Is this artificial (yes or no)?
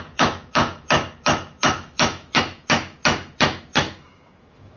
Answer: yes